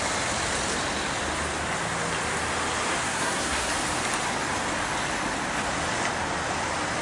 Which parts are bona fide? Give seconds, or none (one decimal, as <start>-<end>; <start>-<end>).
0.0-3.0; 3.7-7.0